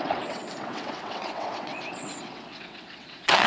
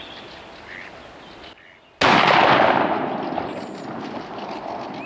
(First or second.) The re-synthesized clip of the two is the first